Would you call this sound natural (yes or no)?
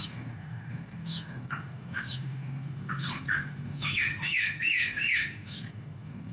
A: no